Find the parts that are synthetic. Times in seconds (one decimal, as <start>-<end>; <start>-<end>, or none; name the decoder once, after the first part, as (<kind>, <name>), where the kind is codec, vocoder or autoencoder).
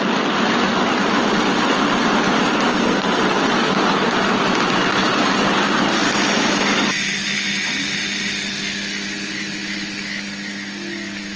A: 2.7-3.2 (codec, SNAC)